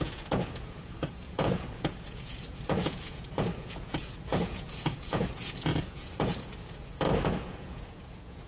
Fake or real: fake